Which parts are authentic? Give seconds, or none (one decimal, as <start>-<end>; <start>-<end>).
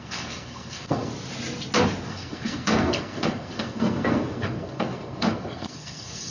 1.1-2.1